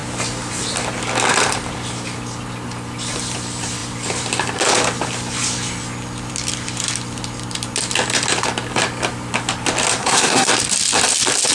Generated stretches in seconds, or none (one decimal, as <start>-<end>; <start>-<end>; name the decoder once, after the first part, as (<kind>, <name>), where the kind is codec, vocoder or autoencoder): 10.0-10.5 (codec, SNAC)